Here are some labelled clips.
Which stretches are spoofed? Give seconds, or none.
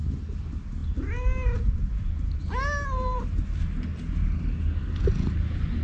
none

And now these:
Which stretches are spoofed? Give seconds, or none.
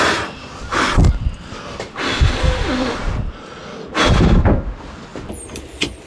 0.0-0.7 (vocoder, BigVGAN v2); 4.4-6.1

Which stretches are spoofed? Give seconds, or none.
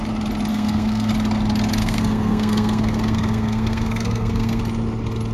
0.5-1.1 (codec, SNAC); 1.8-4.6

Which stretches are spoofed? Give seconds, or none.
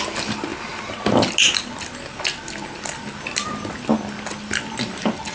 none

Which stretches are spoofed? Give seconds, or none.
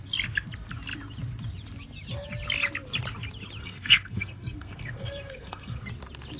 3.6-5.8 (codec, SNAC)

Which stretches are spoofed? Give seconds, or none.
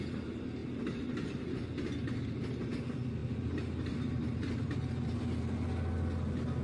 3.2-5.2 (vocoder, BigVGAN v2)